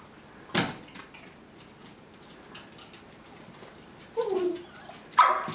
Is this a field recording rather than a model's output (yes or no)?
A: yes